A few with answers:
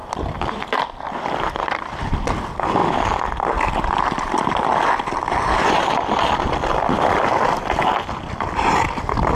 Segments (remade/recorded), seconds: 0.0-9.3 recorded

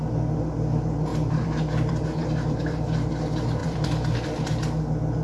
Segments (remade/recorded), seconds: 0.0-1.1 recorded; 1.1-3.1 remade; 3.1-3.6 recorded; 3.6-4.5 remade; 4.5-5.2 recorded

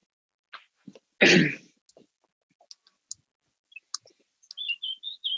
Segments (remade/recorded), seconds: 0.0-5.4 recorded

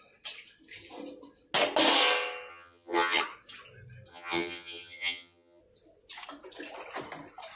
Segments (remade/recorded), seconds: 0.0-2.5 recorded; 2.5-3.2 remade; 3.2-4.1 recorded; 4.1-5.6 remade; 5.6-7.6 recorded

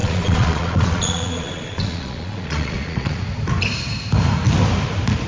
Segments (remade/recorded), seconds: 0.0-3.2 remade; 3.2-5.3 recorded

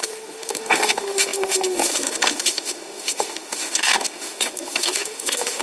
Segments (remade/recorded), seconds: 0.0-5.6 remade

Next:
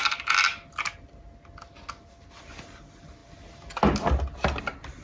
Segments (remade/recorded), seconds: 0.0-2.1 recorded; 2.1-3.2 remade; 3.2-4.6 recorded; 4.6-5.0 remade

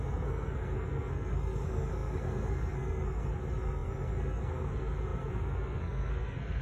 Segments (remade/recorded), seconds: 0.0-6.6 remade